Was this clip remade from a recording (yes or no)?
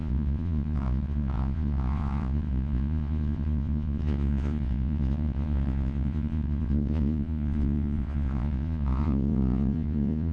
yes